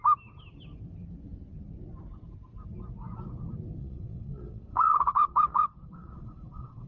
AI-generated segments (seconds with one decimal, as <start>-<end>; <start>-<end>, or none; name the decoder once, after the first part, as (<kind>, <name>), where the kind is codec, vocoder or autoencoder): 3.8-6.9 (vocoder, WaveNeXt)